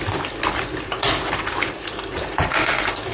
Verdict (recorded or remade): remade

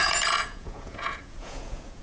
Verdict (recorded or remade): remade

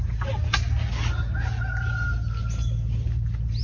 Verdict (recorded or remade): recorded